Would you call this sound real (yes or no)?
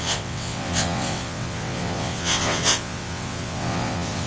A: no